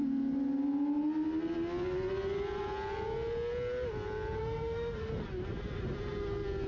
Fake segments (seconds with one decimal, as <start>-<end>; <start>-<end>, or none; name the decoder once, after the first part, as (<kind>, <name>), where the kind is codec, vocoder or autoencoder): 4.4-5.1 (autoencoder, DAC-VAE)